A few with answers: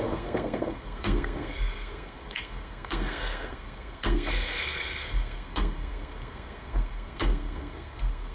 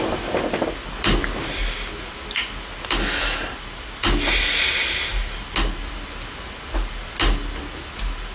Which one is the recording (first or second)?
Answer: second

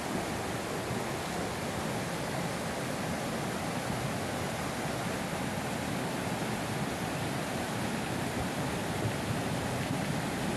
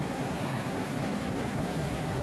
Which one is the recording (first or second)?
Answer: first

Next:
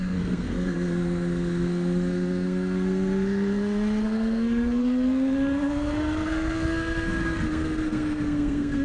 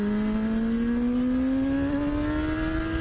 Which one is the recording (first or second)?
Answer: second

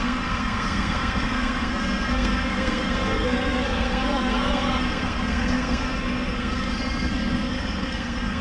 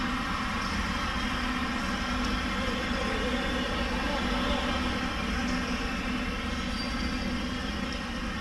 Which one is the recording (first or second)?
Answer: second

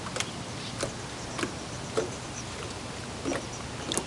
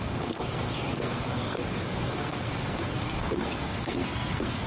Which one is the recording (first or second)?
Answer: first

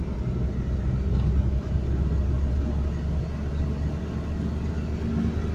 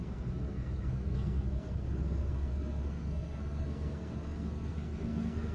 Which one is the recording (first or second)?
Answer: first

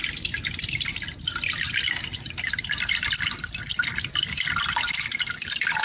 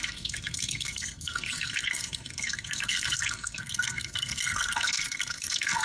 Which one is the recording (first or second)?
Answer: first